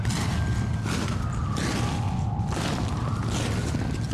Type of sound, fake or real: real